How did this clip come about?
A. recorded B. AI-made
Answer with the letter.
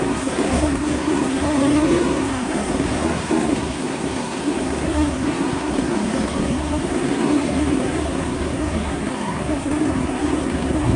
B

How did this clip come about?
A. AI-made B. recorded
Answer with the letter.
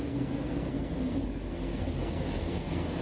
A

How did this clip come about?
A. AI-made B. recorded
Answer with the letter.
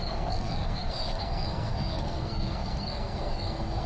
A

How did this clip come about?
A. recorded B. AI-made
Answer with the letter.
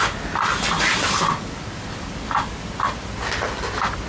A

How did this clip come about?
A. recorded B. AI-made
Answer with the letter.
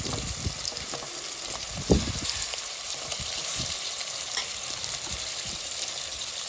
A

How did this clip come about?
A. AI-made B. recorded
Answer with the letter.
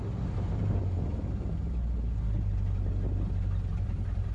B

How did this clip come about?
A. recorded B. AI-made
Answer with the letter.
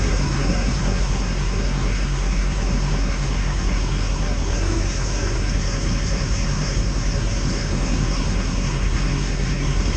B